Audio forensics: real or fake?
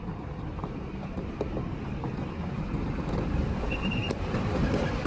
fake